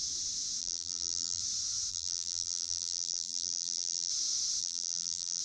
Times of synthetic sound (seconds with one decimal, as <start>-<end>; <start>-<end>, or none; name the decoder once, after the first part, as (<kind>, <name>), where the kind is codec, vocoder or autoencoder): 0.6-1.4 (vocoder, BigVGAN v2); 1.9-4.1; 4.6-5.4